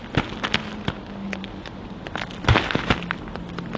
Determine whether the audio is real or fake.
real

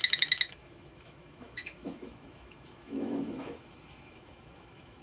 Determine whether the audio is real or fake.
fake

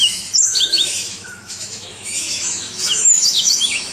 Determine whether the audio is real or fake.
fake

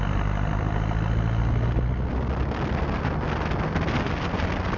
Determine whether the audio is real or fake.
real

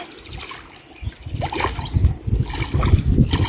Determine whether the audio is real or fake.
real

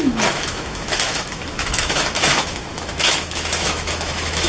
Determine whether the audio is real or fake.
fake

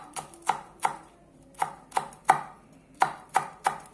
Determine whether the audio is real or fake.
real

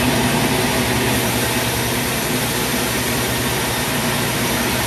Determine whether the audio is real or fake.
real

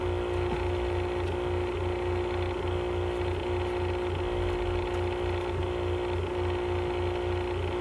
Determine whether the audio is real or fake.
real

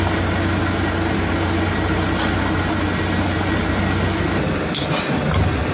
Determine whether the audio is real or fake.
real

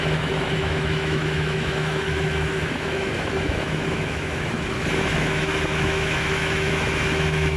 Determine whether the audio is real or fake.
fake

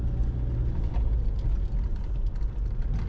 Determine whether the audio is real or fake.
real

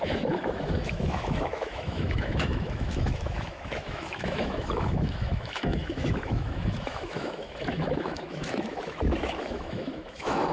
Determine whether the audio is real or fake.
fake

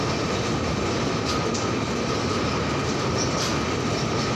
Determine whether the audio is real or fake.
real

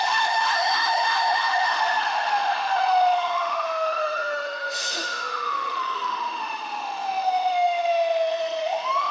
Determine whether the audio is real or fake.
fake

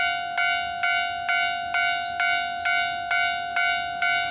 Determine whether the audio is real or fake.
real